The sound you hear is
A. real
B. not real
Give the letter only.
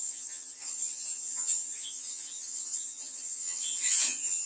B